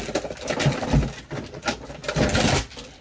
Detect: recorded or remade recorded